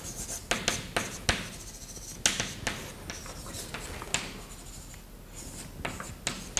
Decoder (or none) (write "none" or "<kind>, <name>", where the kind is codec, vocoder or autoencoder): none